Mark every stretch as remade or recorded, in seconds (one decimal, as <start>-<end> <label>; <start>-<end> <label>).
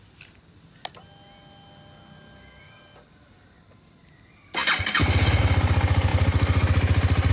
0.0-7.3 recorded